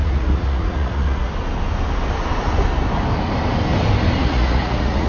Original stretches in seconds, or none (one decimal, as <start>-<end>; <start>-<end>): 1.3-4.2